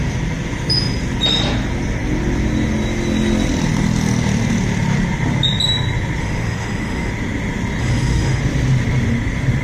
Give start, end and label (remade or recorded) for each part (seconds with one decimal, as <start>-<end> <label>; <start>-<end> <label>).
0.0-6.2 recorded; 6.2-7.1 remade; 7.1-7.8 recorded; 7.8-8.4 remade; 8.4-9.6 recorded

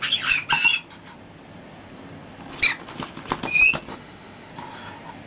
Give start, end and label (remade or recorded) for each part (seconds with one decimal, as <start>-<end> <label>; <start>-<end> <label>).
0.0-3.9 recorded; 3.9-4.5 remade; 4.5-5.3 recorded

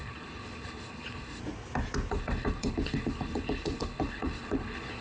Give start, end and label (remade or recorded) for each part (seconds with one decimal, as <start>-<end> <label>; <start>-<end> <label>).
0.0-1.4 remade; 1.4-2.1 recorded; 2.1-5.0 remade

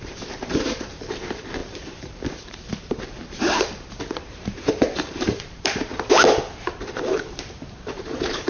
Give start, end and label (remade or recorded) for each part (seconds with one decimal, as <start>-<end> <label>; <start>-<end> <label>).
0.0-5.9 remade; 5.9-8.0 recorded; 8.0-8.5 remade

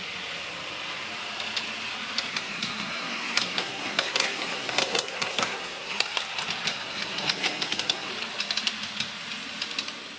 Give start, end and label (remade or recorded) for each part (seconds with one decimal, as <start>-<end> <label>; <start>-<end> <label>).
0.0-2.3 recorded; 2.3-6.2 remade; 6.2-6.7 recorded; 6.7-8.1 remade; 8.1-10.2 recorded

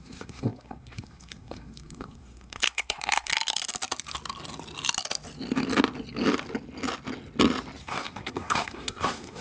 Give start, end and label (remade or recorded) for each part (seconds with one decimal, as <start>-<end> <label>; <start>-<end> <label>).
0.0-3.3 remade; 3.3-7.8 recorded; 7.8-9.4 remade

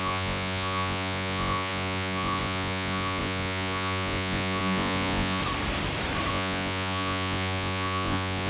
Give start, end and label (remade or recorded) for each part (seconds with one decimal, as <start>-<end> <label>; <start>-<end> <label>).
0.0-5.4 remade; 5.4-6.3 recorded; 6.3-8.5 remade